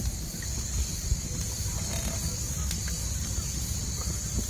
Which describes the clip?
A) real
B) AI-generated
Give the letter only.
A